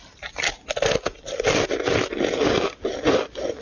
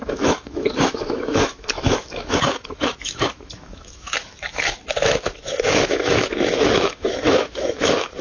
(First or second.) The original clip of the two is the first